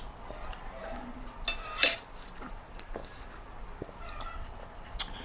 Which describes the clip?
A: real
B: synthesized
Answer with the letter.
A